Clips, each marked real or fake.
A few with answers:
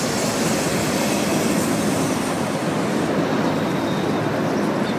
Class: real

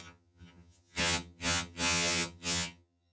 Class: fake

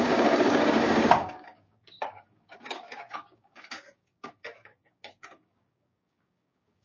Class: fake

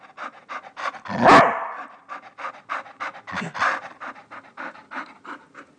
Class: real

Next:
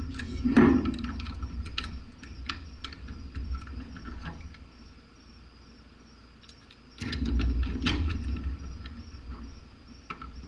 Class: real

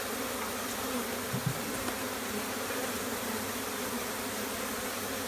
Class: real